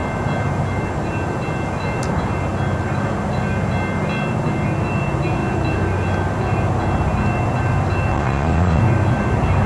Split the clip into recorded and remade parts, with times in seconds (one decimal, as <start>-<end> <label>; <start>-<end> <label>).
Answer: 0.0-8.1 recorded; 8.1-8.8 remade; 8.8-9.7 recorded